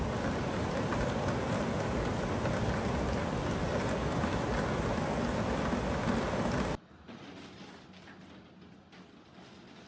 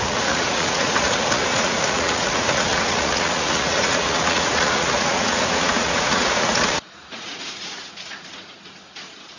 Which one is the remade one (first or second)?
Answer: second